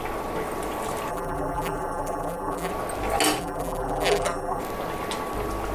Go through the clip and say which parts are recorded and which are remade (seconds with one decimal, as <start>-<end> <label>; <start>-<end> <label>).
0.0-1.1 recorded; 1.1-2.7 remade; 2.7-3.4 recorded; 3.4-4.6 remade; 4.6-5.7 recorded